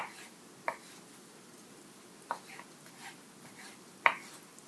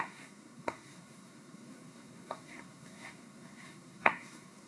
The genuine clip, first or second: first